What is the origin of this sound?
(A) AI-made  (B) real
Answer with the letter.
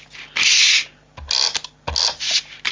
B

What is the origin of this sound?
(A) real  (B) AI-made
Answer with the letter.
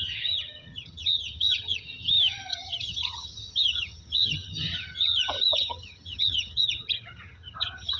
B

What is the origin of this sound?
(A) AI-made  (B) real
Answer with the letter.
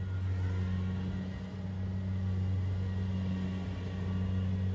B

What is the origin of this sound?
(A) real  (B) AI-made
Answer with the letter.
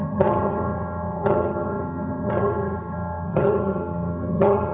B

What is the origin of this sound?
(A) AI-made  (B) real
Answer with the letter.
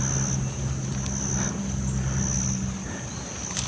B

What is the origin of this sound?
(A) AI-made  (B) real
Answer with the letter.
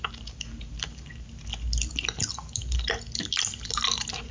B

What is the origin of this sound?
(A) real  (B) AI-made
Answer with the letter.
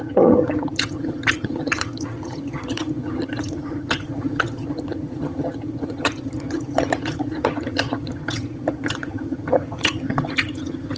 B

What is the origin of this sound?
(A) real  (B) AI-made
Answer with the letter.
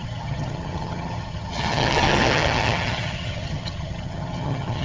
B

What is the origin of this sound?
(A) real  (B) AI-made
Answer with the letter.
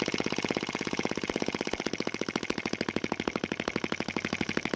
A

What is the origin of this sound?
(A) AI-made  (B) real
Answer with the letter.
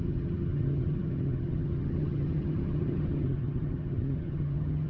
A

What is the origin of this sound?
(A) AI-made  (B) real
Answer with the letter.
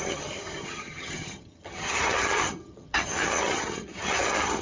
A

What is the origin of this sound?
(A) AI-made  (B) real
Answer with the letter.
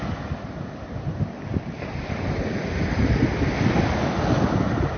B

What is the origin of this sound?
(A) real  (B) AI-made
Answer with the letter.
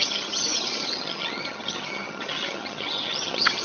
B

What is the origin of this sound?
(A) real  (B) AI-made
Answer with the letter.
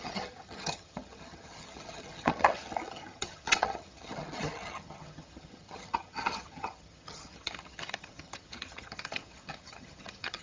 B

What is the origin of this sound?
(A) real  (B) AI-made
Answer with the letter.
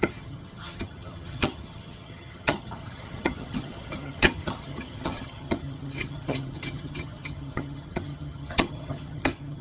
B